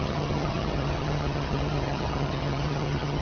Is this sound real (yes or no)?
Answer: no